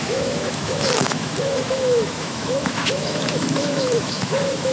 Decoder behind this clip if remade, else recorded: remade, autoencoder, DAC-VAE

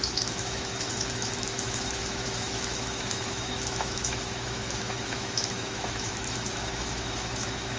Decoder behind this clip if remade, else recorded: remade, autoencoder, DAC-VAE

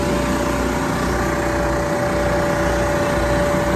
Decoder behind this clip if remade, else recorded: recorded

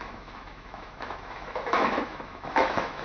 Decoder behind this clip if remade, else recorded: remade, autoencoder, DAC-VAE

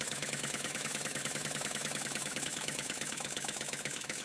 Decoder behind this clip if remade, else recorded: remade, autoencoder, DAC-VAE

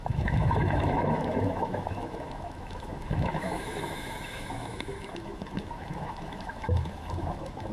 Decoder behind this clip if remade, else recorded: remade, autoencoder, DAC-VAE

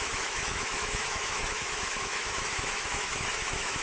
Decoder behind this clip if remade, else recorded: remade, autoencoder, DAC-VAE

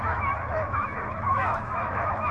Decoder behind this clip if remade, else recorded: remade, autoencoder, DAC-VAE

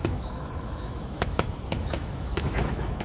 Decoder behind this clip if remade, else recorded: remade, autoencoder, DAC-VAE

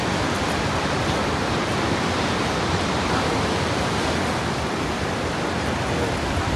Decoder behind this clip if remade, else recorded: recorded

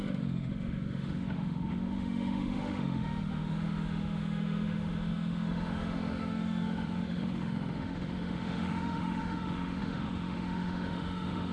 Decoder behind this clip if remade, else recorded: remade, autoencoder, DAC-VAE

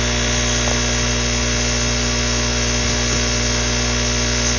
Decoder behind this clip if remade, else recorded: recorded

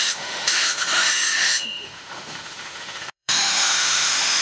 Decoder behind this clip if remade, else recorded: remade, autoencoder, DAC-VAE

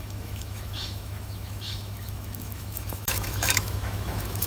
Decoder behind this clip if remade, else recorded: remade, autoencoder, DAC-VAE